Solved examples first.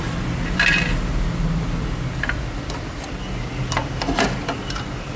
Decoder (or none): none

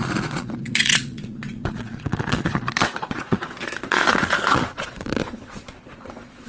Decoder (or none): vocoder, Vocos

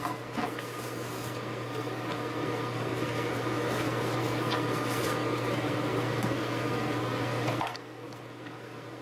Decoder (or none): codec, SNAC